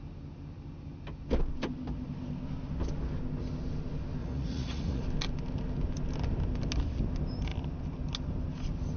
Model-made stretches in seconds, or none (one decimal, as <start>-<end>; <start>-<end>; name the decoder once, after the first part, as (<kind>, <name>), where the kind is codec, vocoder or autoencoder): 4.2-5.0 (vocoder, Vocos)